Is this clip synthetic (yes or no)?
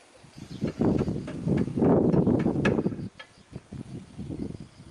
no